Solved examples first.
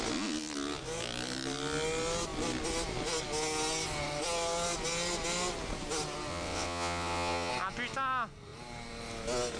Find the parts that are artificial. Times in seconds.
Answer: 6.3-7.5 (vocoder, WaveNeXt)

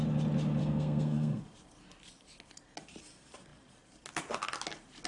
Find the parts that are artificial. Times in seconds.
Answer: 0.6-1.4 (codec, SNAC)

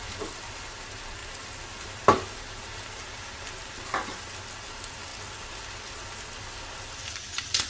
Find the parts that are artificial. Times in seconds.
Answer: none